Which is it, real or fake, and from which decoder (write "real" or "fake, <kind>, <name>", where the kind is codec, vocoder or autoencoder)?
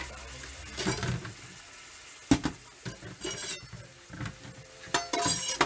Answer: real